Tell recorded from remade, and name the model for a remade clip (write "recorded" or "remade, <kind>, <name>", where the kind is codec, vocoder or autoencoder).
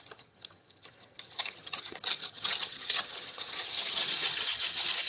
remade, vocoder, HiFi-GAN